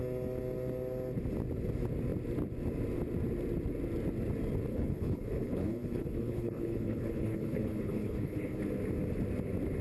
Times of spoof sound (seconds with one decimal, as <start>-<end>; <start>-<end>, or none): 4.7-8.6

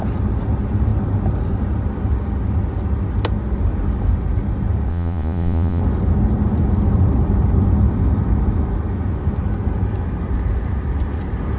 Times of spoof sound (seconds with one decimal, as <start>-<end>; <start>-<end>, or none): 4.9-5.8

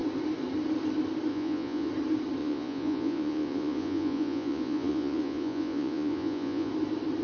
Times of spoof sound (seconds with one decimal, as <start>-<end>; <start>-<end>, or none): 1.3-1.9; 2.4-6.7

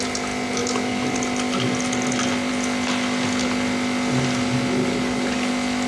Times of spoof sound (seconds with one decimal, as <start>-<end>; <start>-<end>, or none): 4.8-5.5